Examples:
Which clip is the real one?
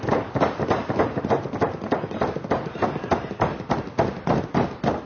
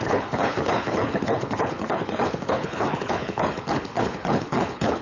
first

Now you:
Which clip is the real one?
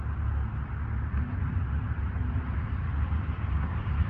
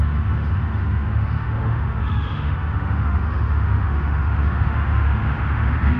first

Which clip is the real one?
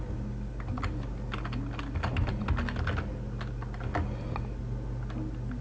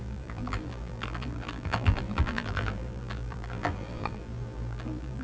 first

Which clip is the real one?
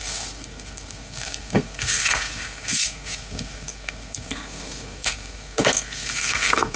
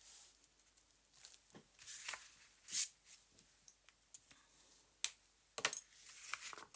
second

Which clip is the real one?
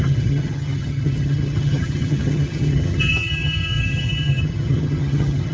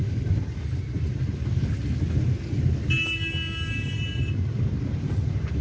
second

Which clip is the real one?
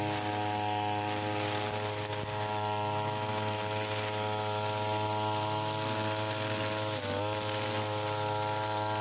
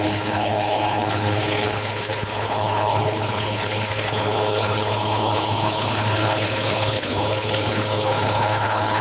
first